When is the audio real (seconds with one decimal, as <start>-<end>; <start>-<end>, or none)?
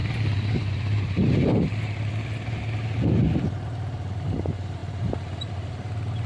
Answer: 0.0-6.3